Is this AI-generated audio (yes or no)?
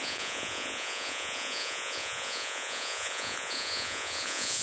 yes